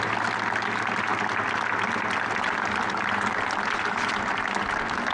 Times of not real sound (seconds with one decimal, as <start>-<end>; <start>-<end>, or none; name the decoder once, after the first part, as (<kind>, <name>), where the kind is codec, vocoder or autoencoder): none